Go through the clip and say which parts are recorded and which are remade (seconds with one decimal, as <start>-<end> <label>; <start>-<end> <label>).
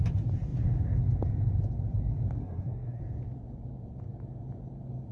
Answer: 0.0-2.4 recorded; 2.4-3.0 remade; 3.0-5.1 recorded